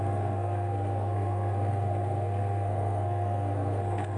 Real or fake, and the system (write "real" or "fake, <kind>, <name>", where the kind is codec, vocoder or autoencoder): fake, codec, SNAC